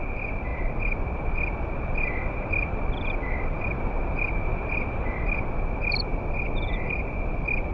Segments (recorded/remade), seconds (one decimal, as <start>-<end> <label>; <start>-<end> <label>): 0.0-7.7 recorded